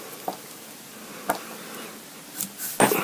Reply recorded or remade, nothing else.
recorded